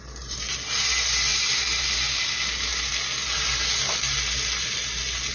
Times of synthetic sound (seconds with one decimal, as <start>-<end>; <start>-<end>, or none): none